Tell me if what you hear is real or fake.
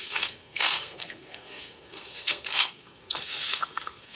fake